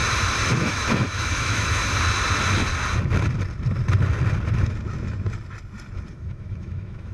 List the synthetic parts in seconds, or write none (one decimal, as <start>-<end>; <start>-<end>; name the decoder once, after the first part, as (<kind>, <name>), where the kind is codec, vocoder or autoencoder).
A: 0.6-1.8 (autoencoder, DAC-VAE); 6.1-7.1